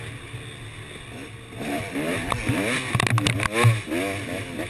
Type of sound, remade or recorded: recorded